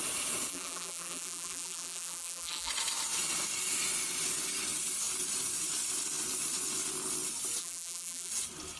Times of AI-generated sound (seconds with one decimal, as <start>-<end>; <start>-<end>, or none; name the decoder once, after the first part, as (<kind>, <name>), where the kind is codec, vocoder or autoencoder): 0.5-2.7 (vocoder, BigVGAN v2); 7.6-8.3